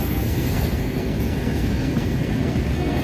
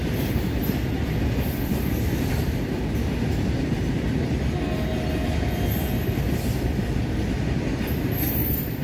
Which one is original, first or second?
second